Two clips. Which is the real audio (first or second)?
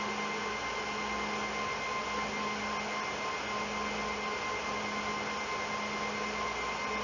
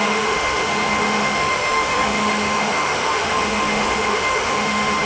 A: first